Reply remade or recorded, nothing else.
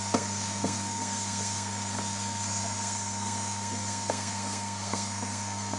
remade